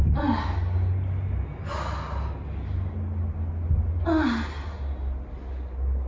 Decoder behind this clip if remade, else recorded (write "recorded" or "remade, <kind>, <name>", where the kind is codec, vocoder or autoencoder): recorded